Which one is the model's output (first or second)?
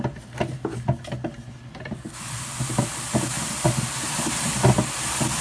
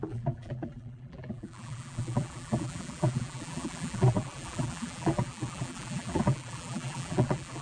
second